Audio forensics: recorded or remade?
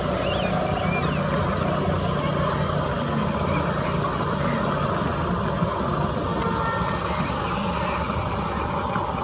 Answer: recorded